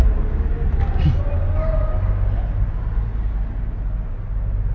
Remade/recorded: recorded